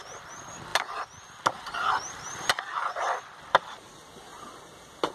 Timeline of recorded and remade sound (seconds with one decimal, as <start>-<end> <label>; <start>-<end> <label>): 0.0-5.1 recorded